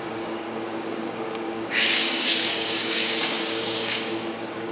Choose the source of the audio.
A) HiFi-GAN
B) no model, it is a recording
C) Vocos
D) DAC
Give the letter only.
D